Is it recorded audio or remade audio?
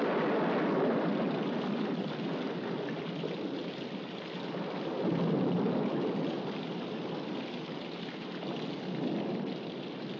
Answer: recorded